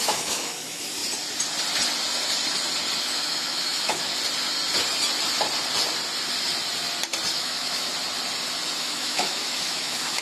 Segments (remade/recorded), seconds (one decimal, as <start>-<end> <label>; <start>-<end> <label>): 0.0-1.0 remade; 1.0-3.0 recorded; 3.0-4.1 remade; 4.1-7.3 recorded; 7.3-7.9 remade; 7.9-8.8 recorded; 8.8-10.2 remade